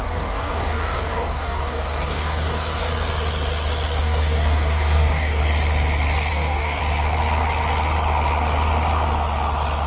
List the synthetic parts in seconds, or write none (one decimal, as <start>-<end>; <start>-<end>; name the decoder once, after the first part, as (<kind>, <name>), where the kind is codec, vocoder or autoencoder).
0.0-2.9 (codec, DAC); 4.0-5.4; 6.3-6.8